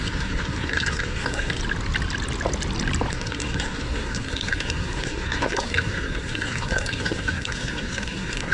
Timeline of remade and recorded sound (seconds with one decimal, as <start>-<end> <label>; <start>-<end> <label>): 0.0-1.6 remade; 1.6-3.1 recorded; 3.1-8.5 remade